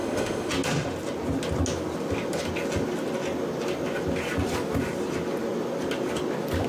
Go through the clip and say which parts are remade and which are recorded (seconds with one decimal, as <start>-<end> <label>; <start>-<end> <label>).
0.0-0.5 remade; 0.5-6.7 recorded